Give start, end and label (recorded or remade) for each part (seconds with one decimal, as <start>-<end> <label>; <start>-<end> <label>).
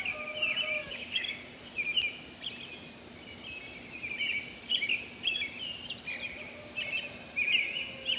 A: 0.0-0.8 recorded; 0.8-1.3 remade; 1.3-8.2 recorded